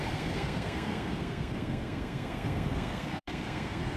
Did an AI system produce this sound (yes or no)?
yes